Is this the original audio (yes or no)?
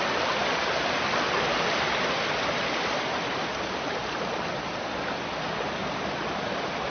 yes